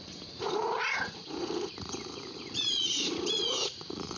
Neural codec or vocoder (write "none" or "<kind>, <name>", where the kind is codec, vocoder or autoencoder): vocoder, Vocos